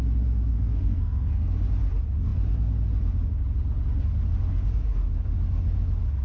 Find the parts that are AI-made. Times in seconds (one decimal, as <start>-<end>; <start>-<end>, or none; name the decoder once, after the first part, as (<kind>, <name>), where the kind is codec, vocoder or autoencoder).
0.5-1.5 (codec, SNAC)